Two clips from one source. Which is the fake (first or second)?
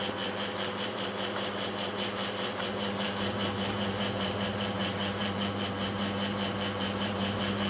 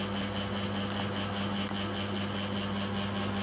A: first